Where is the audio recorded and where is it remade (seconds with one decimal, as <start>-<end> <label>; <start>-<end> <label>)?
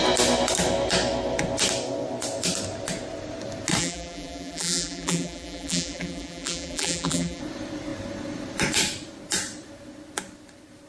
0.0-3.8 recorded; 3.8-7.4 remade; 7.4-10.9 recorded